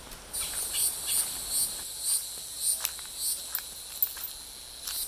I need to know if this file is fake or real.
real